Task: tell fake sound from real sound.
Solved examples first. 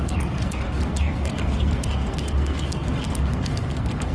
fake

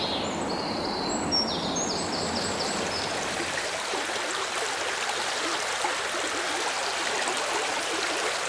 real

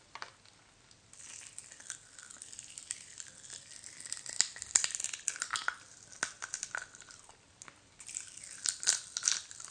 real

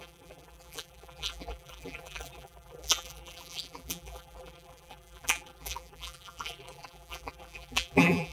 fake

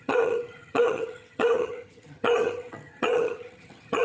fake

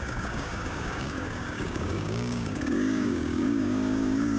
fake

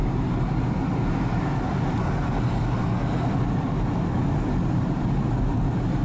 real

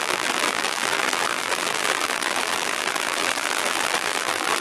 fake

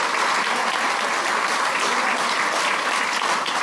real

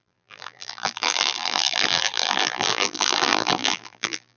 fake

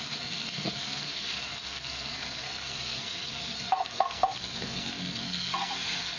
fake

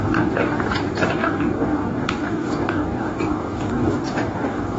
fake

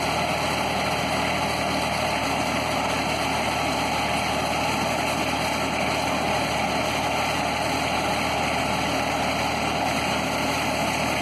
real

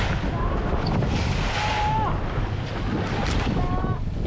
real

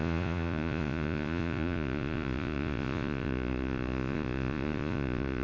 fake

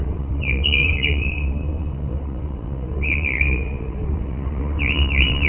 fake